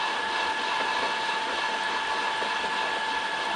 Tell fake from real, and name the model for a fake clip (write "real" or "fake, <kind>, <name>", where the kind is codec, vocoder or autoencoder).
real